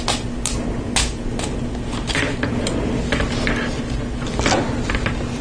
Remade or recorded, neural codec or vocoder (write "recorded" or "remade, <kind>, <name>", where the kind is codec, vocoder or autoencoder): recorded